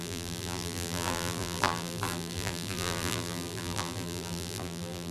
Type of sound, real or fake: fake